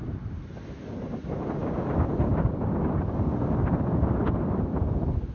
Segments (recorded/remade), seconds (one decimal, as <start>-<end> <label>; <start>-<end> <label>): 0.0-5.3 recorded